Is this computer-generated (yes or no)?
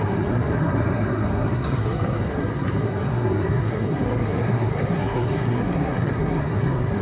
yes